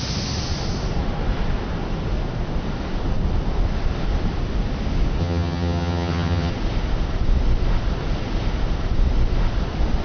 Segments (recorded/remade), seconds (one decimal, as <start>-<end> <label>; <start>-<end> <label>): 0.0-5.2 recorded; 5.2-6.5 remade; 6.5-10.0 recorded